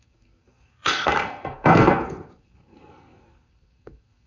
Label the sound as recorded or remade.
remade